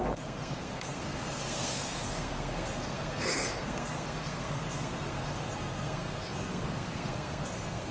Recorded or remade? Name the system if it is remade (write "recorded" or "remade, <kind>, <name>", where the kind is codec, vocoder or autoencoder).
remade, codec, SNAC